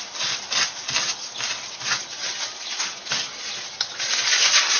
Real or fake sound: real